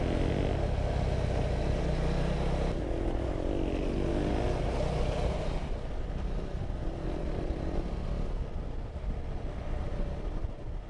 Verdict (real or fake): real